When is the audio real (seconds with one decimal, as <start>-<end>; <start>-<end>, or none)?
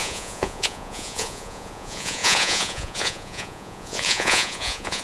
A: none